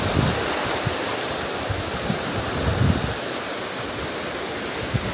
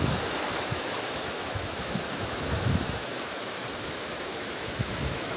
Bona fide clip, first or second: first